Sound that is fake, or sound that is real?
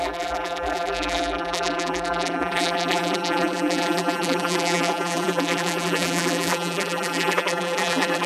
fake